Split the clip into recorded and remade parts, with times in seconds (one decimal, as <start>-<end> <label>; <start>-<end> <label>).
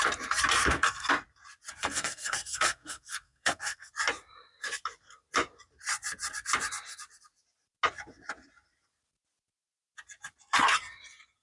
0.0-0.6 recorded; 0.6-1.1 remade; 1.1-1.8 recorded; 1.8-3.9 remade; 3.9-11.4 recorded